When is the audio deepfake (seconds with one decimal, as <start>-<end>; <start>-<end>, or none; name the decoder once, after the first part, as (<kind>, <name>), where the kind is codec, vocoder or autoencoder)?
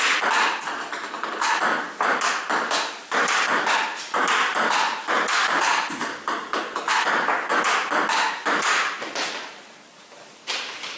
none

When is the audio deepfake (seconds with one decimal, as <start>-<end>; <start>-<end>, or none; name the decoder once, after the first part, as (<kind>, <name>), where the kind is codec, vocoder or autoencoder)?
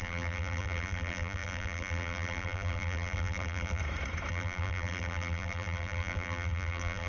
0.0-3.8 (vocoder, BigVGAN v2); 4.3-7.1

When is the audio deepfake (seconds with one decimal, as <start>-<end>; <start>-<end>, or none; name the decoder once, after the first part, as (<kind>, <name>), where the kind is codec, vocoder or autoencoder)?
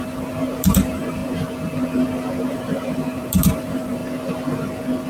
0.0-1.2 (vocoder, BigVGAN v2); 2.5-4.0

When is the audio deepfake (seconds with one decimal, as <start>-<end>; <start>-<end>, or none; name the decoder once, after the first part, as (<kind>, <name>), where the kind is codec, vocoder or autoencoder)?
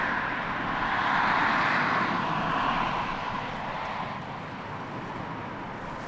none